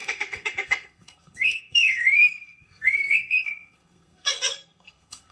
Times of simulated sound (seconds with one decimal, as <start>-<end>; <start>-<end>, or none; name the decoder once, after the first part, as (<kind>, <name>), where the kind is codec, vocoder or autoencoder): 0.0-5.3 (codec, SNAC)